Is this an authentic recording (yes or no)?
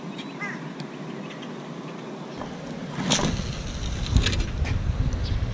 yes